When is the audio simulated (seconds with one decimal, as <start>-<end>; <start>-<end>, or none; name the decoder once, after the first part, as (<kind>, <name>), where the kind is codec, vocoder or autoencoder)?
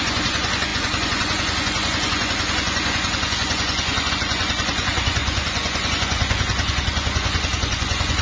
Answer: 0.0-8.2 (vocoder, Vocos)